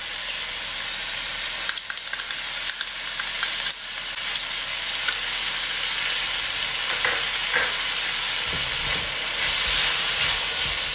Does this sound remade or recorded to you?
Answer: recorded